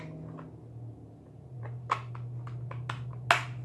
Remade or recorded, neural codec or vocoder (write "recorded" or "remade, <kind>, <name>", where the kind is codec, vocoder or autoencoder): recorded